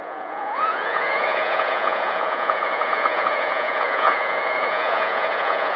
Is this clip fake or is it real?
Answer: fake